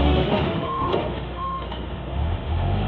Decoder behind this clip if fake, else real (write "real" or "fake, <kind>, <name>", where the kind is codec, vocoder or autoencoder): fake, autoencoder, DAC-VAE